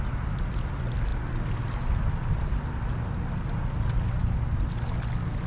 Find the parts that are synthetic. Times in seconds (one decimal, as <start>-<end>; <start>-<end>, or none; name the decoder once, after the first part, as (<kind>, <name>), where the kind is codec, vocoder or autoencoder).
none